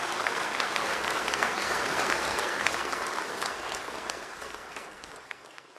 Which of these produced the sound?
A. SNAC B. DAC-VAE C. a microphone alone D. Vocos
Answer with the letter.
A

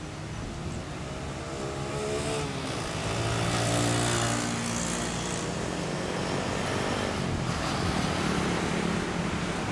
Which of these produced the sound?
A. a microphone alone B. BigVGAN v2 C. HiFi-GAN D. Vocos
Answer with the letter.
A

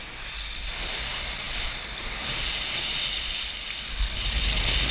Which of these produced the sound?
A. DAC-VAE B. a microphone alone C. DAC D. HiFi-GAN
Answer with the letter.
B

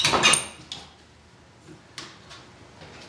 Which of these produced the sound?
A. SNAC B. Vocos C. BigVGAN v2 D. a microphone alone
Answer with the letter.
D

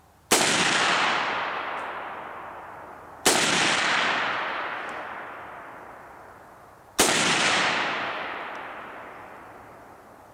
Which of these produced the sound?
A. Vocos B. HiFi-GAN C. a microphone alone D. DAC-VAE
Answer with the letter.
C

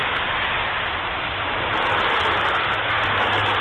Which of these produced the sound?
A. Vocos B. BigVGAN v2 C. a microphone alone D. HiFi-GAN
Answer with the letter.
C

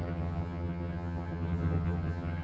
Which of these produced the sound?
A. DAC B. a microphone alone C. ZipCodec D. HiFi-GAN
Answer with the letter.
D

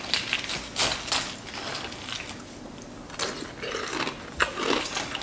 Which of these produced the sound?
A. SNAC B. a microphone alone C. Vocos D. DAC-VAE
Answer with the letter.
B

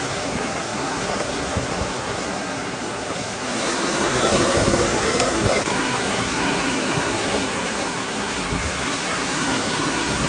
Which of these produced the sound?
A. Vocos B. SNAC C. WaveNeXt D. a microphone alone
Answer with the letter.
B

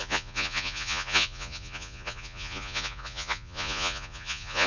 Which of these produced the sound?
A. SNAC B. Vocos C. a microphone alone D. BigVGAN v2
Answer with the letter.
B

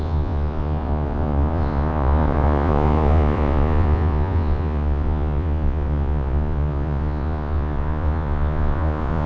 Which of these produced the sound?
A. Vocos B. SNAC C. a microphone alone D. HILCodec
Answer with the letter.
A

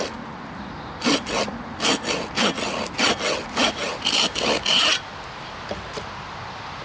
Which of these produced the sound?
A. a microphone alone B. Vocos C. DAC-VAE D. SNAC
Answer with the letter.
A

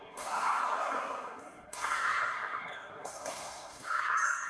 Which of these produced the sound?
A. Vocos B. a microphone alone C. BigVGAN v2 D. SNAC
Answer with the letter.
D